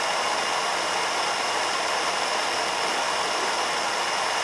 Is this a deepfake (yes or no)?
no